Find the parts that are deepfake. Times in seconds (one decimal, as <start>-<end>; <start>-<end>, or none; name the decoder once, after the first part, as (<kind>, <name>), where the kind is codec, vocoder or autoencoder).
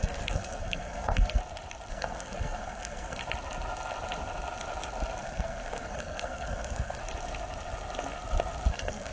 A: 0.0-1.4 (codec, SNAC); 1.9-3.2; 5.2-7.0; 8.7-9.1